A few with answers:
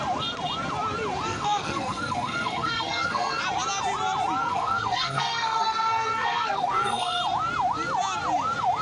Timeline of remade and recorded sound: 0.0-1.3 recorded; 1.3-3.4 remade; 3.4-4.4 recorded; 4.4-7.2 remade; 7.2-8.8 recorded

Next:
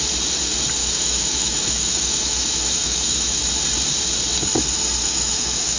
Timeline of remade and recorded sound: 0.0-0.8 recorded; 0.8-3.4 remade; 3.4-5.0 recorded; 5.0-5.8 remade

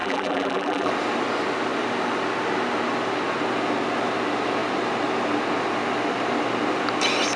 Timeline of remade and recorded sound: 0.0-0.9 remade; 0.9-7.4 recorded

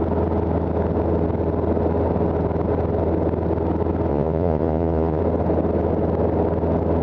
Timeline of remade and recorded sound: 0.0-4.1 recorded; 4.1-5.2 remade; 5.2-7.0 recorded

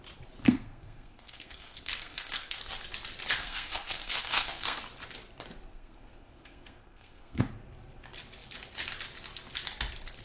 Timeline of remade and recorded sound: 0.0-0.4 recorded; 0.4-2.6 remade; 2.6-3.4 recorded; 3.4-4.8 remade; 4.8-5.7 recorded; 5.7-7.4 remade; 7.4-10.2 recorded

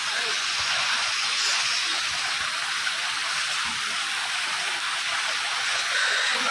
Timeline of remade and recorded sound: 0.0-1.9 remade; 1.9-5.6 recorded; 5.6-6.5 remade